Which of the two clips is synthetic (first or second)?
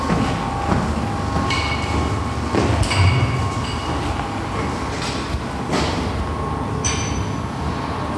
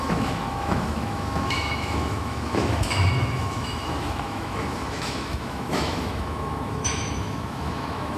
second